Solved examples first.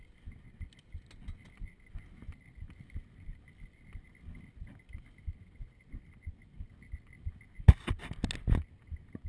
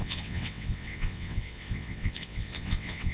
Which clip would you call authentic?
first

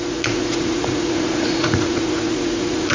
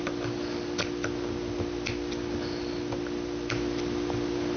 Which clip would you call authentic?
second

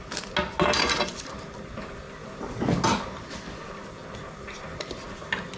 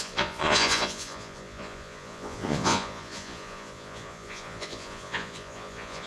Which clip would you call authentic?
first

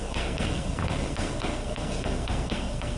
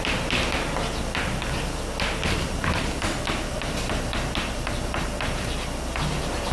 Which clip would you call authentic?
second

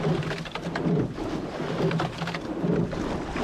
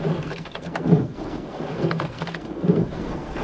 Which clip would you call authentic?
first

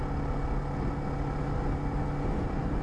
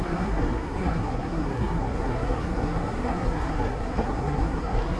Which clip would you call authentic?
first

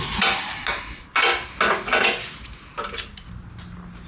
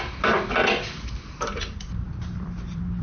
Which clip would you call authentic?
first